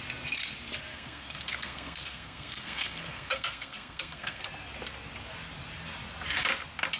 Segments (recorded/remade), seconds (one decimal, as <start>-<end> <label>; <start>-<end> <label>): 0.0-0.9 recorded; 0.9-4.4 remade; 4.4-7.0 recorded